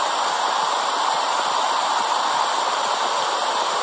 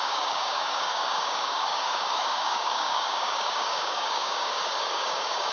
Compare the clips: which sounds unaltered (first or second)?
first